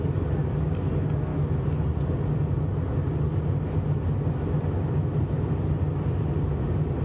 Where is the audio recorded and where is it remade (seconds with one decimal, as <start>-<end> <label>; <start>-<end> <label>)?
0.0-7.0 recorded